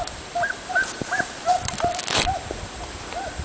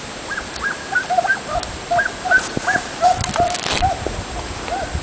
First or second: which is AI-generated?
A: first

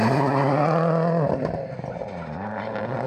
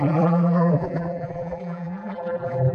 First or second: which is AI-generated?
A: second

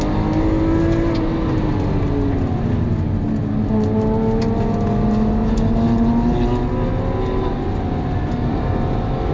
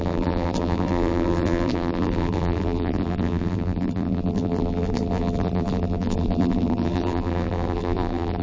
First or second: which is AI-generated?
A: second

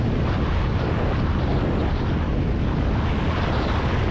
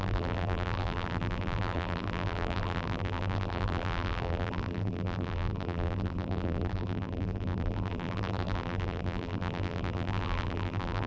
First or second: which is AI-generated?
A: second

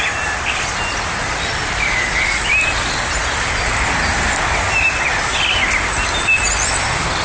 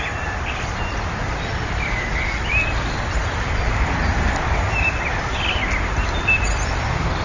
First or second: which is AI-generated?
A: second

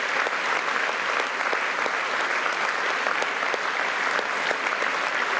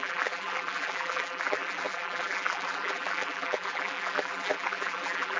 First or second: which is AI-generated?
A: second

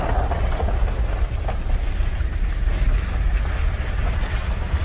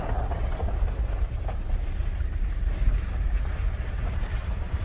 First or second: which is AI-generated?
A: second